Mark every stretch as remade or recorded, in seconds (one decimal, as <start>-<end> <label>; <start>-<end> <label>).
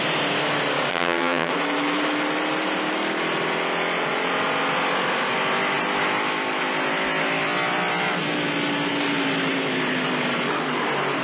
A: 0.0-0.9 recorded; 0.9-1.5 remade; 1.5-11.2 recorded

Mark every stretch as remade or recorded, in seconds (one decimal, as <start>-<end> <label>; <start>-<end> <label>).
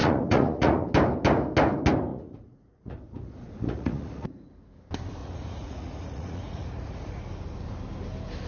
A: 0.0-0.9 remade; 0.9-2.1 recorded; 2.1-4.5 remade; 4.5-5.2 recorded; 5.2-7.2 remade; 7.2-8.5 recorded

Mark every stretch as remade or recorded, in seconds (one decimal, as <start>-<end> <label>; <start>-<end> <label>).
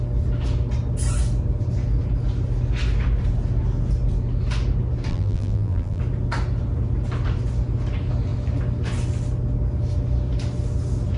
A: 0.0-5.1 recorded; 5.1-6.0 remade; 6.0-11.2 recorded